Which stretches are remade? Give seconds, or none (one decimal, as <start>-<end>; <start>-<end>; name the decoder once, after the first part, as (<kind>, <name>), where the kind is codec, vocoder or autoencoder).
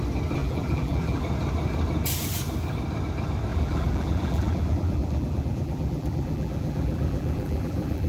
0.4-1.2 (vocoder, BigVGAN v2); 3.5-8.1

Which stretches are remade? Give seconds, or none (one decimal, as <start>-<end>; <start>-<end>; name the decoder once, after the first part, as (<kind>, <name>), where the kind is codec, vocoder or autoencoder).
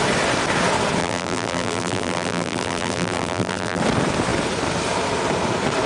1.0-3.8 (vocoder, BigVGAN v2)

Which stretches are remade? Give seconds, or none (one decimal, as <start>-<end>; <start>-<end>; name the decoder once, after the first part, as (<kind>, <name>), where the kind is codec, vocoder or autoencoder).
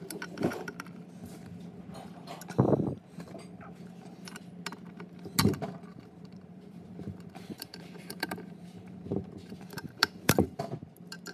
5.9-10.6 (vocoder, BigVGAN v2)